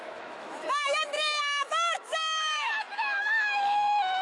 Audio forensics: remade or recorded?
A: remade